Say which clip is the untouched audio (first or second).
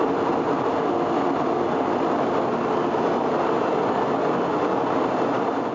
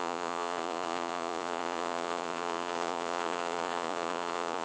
first